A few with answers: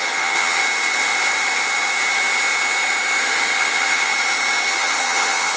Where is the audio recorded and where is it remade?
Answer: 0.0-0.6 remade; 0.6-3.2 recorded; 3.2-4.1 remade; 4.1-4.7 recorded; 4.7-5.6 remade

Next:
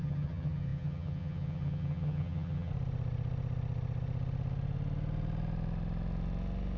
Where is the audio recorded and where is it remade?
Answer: 0.0-2.7 remade; 2.7-6.8 recorded

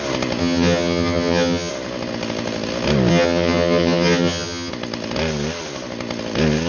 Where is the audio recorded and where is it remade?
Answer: 0.0-0.4 recorded; 0.4-1.7 remade; 1.7-3.1 recorded; 3.1-4.7 remade; 4.7-6.7 recorded

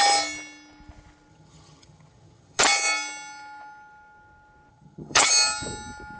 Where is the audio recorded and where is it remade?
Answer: 0.0-1.3 recorded; 1.3-2.6 remade; 2.6-4.7 recorded; 4.7-5.3 remade; 5.3-6.2 recorded

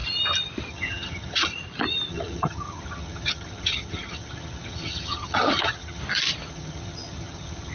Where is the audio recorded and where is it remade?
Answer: 0.0-0.7 recorded; 0.7-1.5 remade; 1.5-2.1 recorded; 2.1-6.0 remade; 6.0-6.5 recorded; 6.5-7.7 remade